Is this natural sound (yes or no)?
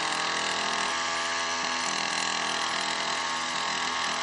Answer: yes